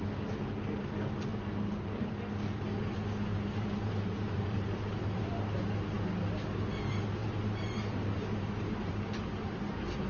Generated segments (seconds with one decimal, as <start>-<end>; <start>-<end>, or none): 1.3-2.2; 3.3-5.3; 7.2-9.4